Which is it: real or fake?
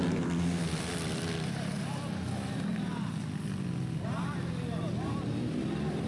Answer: real